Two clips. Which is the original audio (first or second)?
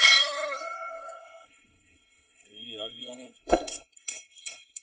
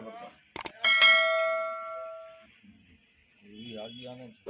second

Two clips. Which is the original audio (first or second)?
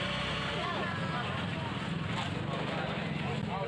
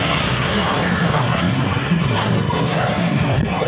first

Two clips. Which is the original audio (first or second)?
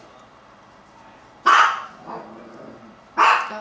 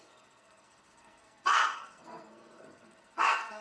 first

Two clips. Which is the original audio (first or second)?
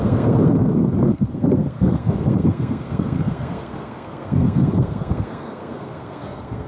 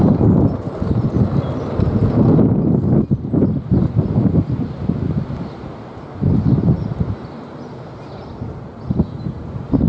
second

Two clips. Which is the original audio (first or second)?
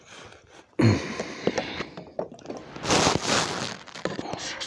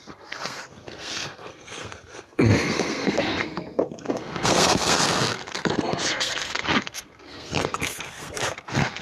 first